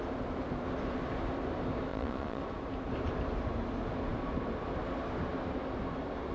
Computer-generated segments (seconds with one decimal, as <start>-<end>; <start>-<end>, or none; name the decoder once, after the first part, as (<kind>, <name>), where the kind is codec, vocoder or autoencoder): 1.9-2.4 (vocoder, Vocos)